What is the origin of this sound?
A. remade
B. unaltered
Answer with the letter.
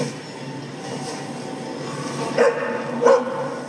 B